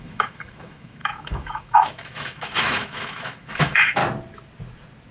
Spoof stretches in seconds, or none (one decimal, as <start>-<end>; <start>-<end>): 0.0-4.0